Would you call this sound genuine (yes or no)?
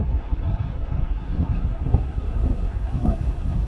no